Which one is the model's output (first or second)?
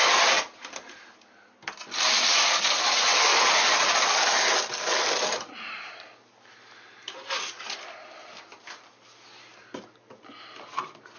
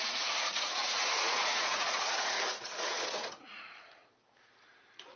second